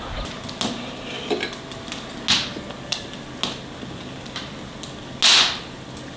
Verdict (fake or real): real